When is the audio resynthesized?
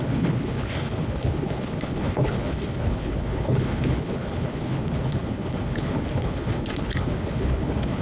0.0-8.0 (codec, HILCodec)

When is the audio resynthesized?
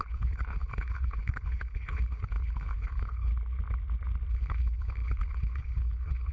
0.0-3.3 (codec, HILCodec); 4.3-6.3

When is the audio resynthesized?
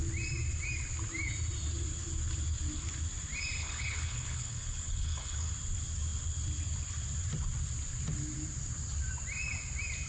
3.6-5.5 (codec, HILCodec)